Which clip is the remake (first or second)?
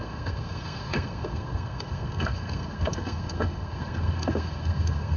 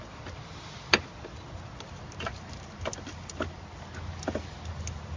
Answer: first